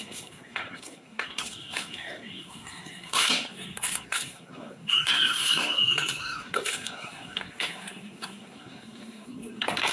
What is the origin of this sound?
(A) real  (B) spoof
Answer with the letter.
B